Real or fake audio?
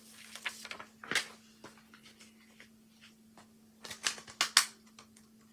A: real